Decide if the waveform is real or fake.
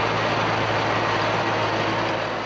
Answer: real